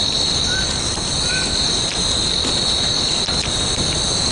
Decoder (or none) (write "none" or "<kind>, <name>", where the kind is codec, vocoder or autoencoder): none